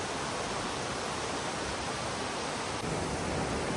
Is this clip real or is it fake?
real